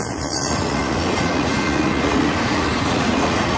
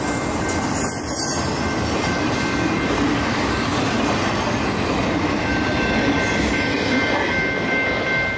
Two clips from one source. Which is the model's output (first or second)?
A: first